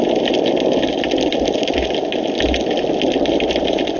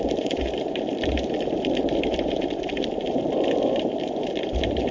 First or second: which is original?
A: first